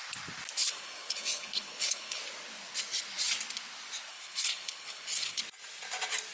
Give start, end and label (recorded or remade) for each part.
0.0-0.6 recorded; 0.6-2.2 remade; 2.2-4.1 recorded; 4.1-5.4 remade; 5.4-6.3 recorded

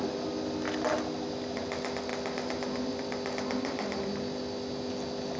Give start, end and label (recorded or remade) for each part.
0.0-5.4 recorded